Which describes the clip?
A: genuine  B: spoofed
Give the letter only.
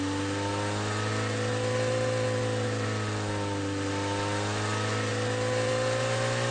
A